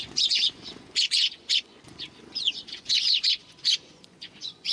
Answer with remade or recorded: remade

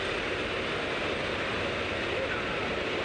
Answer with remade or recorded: recorded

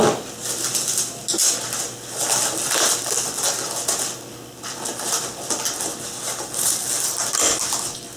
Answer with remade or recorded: recorded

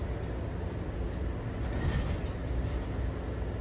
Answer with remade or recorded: recorded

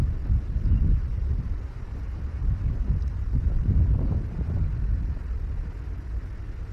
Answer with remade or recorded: recorded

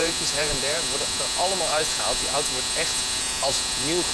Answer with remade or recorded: remade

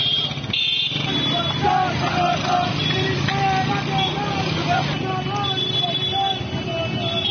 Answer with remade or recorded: recorded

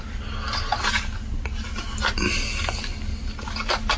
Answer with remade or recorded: recorded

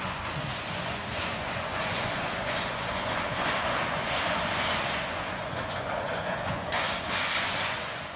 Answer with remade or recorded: remade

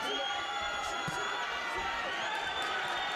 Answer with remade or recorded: recorded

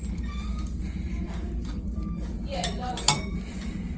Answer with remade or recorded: recorded